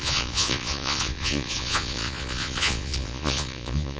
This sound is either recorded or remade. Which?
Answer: remade